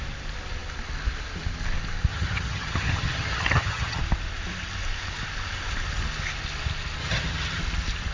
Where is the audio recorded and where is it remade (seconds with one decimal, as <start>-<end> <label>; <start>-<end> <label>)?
0.0-2.1 recorded; 2.1-4.0 remade; 4.0-7.0 recorded; 7.0-7.6 remade; 7.6-8.1 recorded